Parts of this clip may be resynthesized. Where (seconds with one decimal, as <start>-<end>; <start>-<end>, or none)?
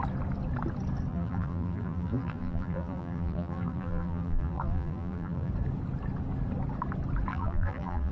1.1-5.5; 7.3-8.1